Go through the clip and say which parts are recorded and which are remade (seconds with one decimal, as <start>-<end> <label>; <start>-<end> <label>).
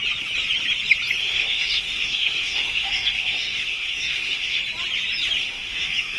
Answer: 0.0-1.2 recorded; 1.2-4.6 remade; 4.6-5.4 recorded; 5.4-6.2 remade